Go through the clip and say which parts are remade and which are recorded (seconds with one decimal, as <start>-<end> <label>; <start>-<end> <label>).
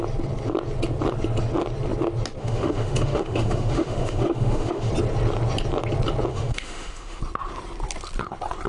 0.0-2.4 recorded; 2.4-4.9 remade; 4.9-6.3 recorded; 6.3-7.2 remade; 7.2-8.7 recorded